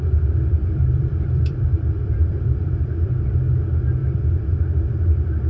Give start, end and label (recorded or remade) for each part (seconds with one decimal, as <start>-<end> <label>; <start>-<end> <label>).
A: 0.0-3.3 remade; 3.3-4.0 recorded; 4.0-5.0 remade; 5.0-5.5 recorded